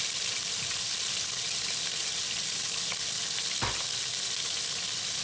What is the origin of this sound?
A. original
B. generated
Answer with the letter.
A